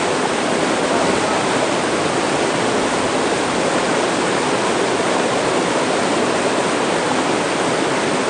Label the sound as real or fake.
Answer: real